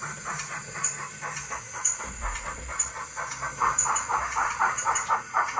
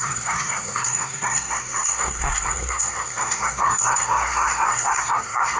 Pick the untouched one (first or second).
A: first